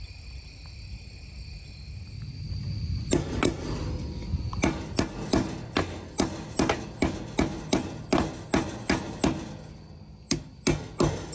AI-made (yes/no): no